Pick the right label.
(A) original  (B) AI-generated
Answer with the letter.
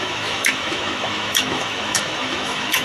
B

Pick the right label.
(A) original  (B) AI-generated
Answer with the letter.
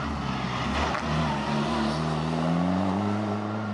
A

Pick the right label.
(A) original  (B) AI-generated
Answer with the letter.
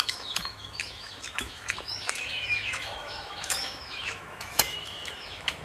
B